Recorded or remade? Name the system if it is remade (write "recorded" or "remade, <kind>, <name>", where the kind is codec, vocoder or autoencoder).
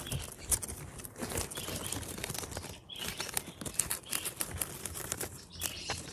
recorded